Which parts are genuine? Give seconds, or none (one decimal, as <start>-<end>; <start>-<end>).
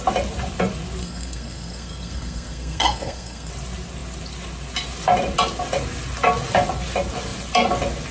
0.0-1.0; 3.5-8.1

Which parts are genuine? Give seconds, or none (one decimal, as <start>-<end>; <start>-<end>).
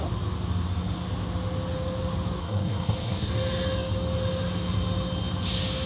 0.0-2.4; 3.3-5.9